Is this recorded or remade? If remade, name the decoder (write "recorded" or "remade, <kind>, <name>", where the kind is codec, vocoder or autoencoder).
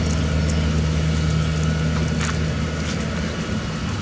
recorded